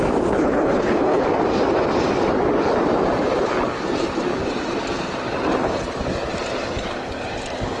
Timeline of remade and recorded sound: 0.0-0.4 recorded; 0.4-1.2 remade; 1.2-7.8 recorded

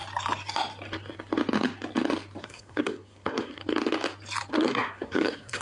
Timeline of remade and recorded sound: 0.0-2.4 recorded; 2.4-3.6 remade; 3.6-4.5 recorded; 4.5-5.6 remade

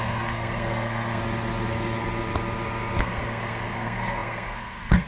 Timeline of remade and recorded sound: 0.0-1.2 remade; 1.2-3.0 recorded; 3.0-5.1 remade